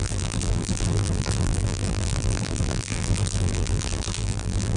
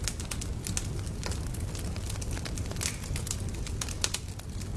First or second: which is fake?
first